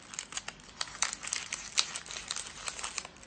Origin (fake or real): real